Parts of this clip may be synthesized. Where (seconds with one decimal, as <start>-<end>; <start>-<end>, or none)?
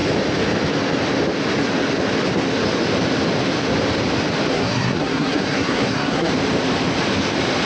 4.5-6.3